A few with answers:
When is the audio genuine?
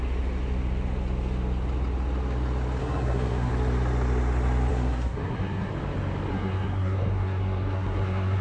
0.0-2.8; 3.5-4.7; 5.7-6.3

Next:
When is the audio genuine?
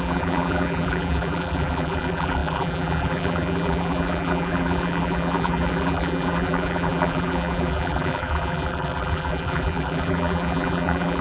none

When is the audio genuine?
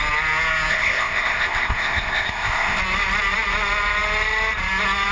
0.0-0.7; 2.8-5.1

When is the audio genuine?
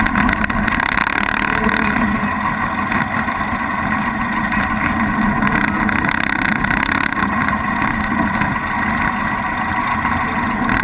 0.0-10.8